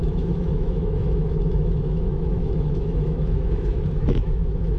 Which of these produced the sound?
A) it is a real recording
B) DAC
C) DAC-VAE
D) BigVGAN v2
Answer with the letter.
C